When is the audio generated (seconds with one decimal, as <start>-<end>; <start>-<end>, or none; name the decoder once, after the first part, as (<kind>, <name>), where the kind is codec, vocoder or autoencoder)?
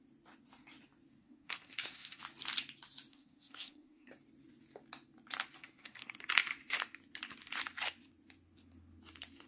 1.2-2.2 (codec, SNAC); 3.1-4.1; 5.6-6.2